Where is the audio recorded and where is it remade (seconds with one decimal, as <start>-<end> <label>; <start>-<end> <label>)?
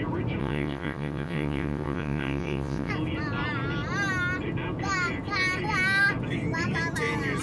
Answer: 0.0-0.4 recorded; 0.4-2.9 remade; 2.9-7.4 recorded